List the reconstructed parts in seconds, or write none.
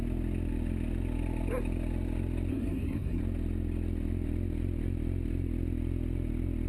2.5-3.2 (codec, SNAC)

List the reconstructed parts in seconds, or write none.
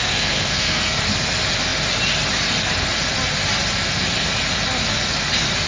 0.0-1.0 (codec, SNAC)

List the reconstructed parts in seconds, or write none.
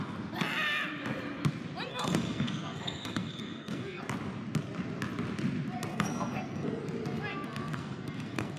1.9-4.0 (codec, SNAC); 5.9-6.8; 7.3-8.6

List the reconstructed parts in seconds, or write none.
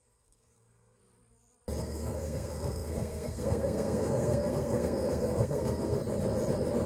0.0-1.0 (codec, SNAC); 1.8-6.0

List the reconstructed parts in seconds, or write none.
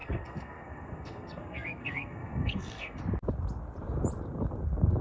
0.0-3.0 (codec, SNAC)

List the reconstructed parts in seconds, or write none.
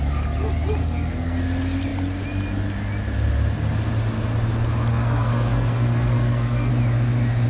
0.8-1.4 (codec, SNAC); 4.9-6.7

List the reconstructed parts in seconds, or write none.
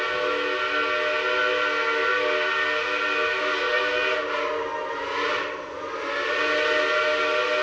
3.4-4.1 (codec, SNAC)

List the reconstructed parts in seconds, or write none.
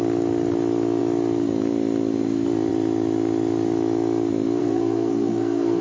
4.6-5.8 (codec, SNAC)